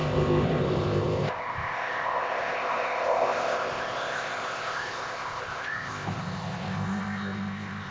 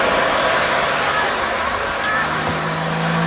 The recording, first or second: second